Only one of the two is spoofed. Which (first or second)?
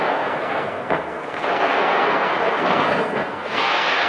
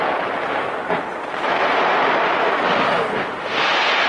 first